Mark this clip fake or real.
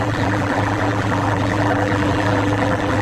fake